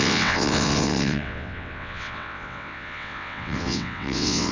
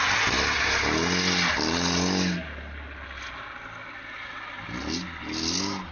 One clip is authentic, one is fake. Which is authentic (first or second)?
second